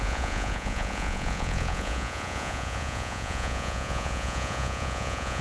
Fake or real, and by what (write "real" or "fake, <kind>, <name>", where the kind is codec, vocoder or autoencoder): fake, vocoder, Vocos